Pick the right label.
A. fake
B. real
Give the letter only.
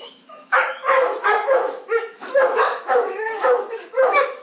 A